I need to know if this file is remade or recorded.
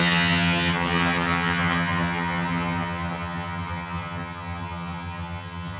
remade